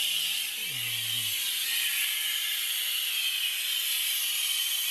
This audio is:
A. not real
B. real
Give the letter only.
B